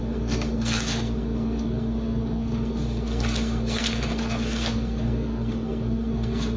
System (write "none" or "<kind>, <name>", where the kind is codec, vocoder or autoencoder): codec, SNAC